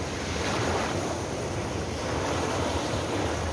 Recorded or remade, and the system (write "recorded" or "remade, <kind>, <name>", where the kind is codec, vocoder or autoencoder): recorded